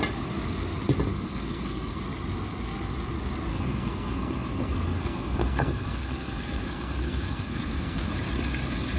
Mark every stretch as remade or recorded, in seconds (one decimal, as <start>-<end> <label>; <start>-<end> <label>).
0.0-1.1 recorded; 1.1-2.0 remade; 2.0-3.5 recorded; 3.5-8.1 remade; 8.1-9.0 recorded